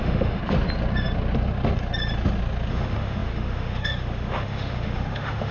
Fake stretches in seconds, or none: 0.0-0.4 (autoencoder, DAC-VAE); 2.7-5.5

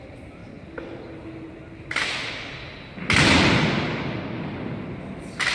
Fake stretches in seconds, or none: none

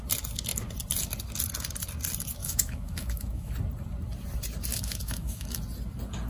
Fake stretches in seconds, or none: 2.4-3.5 (autoencoder, DAC-VAE); 4.7-5.6

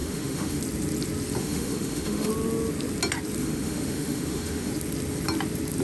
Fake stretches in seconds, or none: 0.0-0.6 (autoencoder, DAC-VAE); 1.4-2.3; 3.4-4.7

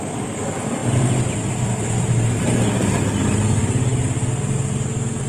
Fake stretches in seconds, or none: none